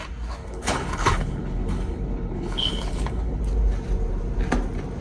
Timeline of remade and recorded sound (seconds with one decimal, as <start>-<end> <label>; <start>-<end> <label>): 0.0-0.4 recorded; 0.4-3.4 remade; 3.4-5.0 recorded